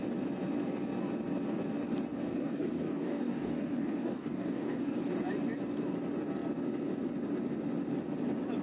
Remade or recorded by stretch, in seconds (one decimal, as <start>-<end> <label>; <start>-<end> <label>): 0.0-2.1 recorded; 2.1-5.0 remade; 5.0-8.6 recorded